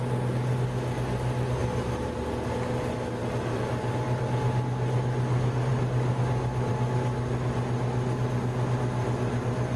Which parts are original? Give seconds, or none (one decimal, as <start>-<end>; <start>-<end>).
0.0-9.8